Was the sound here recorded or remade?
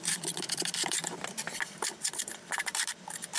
remade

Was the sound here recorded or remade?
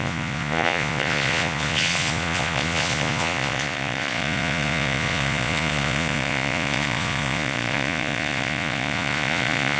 remade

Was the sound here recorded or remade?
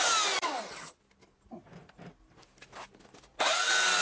recorded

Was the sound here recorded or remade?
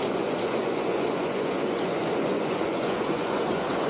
remade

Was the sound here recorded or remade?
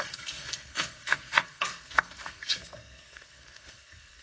remade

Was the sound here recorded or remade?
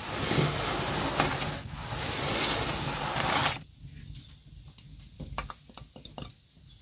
recorded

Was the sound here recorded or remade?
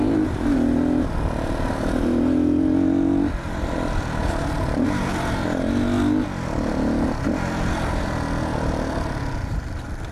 recorded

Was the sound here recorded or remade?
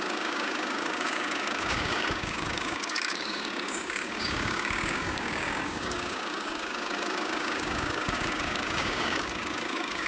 remade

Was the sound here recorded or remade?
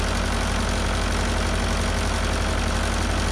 recorded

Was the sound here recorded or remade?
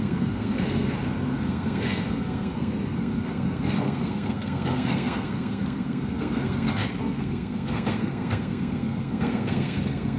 remade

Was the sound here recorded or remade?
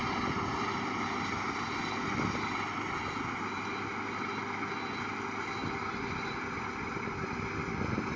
recorded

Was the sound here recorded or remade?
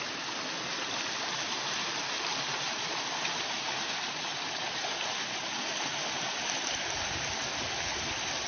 recorded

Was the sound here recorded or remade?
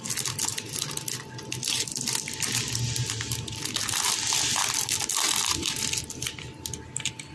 recorded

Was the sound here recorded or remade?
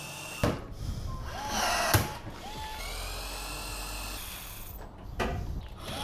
recorded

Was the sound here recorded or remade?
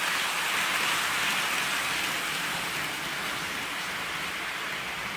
recorded